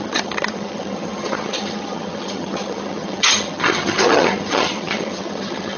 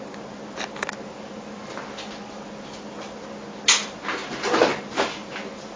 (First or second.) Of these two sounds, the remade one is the first